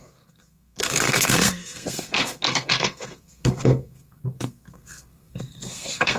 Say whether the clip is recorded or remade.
remade